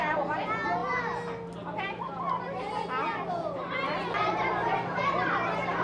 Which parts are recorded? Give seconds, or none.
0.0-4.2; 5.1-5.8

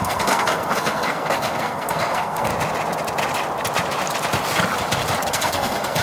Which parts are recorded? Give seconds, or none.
2.5-5.3

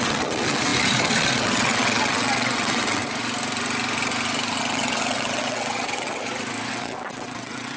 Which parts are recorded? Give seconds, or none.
3.0-4.6; 6.2-6.7

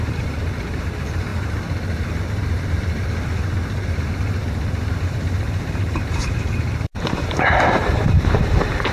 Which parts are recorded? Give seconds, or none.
1.3-3.9; 4.4-4.9

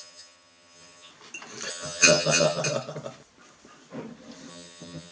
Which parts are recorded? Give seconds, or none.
1.1-1.7; 2.6-4.5

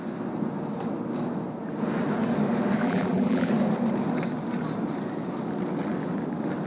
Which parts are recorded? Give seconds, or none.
0.0-2.8; 3.5-6.7

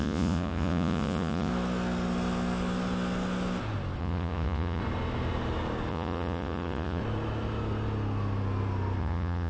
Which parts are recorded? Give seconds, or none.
1.5-4.0; 4.8-5.9; 7.0-9.0